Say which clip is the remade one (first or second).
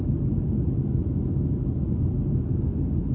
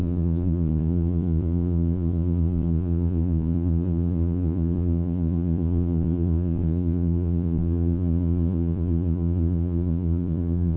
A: second